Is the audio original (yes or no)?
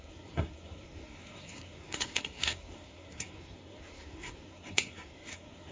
no